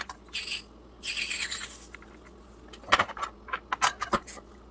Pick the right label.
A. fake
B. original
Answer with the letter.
B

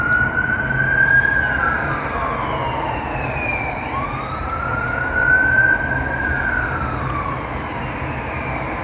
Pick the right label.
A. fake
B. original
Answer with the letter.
B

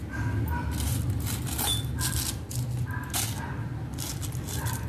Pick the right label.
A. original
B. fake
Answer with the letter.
A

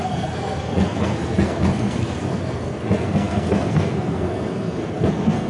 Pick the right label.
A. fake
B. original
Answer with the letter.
A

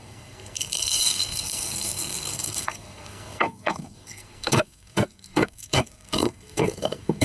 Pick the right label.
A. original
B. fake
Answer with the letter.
B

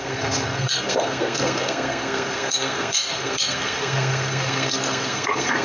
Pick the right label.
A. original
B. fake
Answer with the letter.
B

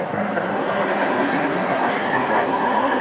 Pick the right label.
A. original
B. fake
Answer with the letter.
B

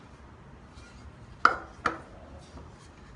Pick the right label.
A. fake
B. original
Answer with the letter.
B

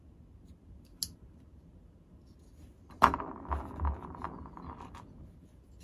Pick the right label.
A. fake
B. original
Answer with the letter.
B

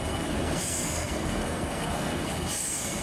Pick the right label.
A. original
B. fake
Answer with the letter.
B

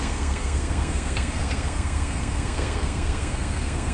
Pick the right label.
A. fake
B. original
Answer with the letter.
A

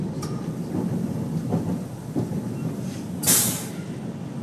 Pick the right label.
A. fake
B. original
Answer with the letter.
B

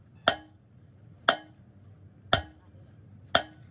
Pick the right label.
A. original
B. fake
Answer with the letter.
A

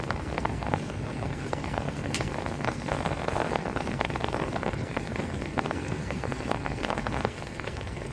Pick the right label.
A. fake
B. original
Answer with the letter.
A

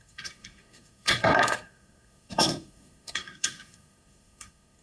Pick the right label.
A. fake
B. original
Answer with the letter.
A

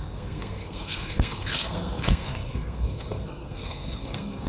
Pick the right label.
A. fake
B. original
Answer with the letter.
A